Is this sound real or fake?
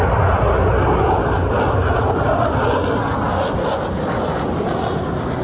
real